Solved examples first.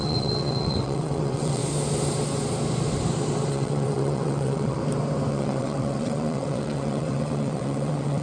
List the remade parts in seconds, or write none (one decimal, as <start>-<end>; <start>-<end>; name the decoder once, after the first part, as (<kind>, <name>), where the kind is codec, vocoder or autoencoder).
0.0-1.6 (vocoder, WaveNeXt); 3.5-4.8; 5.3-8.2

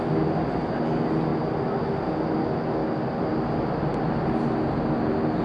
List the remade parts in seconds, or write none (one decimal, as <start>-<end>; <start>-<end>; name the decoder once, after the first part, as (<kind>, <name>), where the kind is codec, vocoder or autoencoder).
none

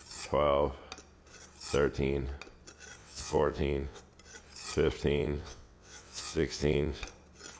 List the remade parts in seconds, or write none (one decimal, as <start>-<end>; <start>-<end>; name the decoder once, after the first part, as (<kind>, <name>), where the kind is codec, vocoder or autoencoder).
3.0-4.0 (vocoder, WaveNeXt); 5.2-7.0